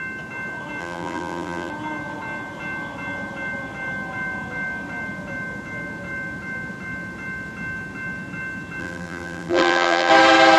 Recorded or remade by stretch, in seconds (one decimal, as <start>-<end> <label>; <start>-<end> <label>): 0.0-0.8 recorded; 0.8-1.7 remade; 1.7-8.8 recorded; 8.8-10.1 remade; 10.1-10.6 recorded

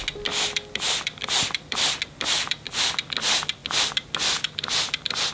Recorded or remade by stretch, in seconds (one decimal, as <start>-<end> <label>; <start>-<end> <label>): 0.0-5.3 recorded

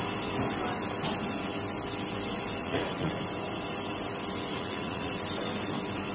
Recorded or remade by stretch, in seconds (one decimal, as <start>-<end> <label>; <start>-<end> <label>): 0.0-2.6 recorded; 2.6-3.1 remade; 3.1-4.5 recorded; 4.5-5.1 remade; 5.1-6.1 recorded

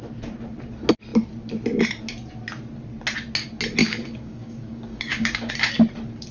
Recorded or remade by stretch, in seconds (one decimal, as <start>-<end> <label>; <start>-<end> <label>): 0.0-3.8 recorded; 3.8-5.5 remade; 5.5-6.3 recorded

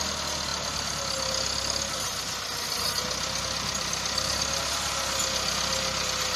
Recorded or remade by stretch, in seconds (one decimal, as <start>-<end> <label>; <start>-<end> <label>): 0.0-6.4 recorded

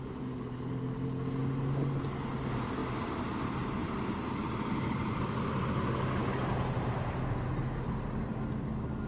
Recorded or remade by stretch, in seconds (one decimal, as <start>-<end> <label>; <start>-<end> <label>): 0.0-9.1 recorded